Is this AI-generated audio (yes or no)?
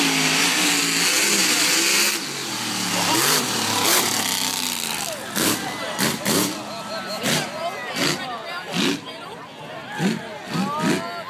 no